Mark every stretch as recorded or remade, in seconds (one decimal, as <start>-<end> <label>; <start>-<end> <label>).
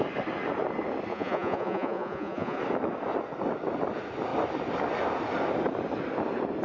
0.0-1.1 recorded; 1.1-2.6 remade; 2.6-6.6 recorded